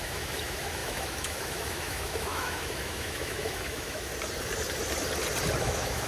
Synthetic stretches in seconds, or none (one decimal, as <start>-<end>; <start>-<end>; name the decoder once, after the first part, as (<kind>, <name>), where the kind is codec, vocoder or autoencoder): 0.0-4.1 (autoencoder, DAC-VAE); 5.6-6.1